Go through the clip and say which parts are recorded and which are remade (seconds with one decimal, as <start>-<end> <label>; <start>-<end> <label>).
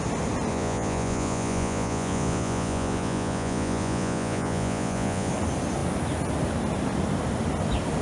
0.0-0.5 recorded; 0.5-5.3 remade; 5.3-8.0 recorded